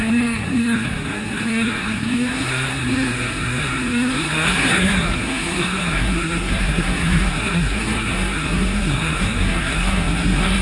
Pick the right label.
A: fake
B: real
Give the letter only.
A